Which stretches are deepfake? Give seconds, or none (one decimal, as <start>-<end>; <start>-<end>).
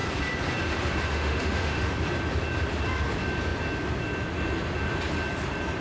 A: 1.1-1.9